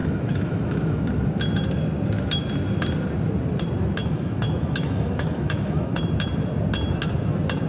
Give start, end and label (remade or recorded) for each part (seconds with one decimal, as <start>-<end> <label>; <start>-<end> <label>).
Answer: 0.0-1.1 remade; 1.1-4.0 recorded; 4.0-6.0 remade; 6.0-7.7 recorded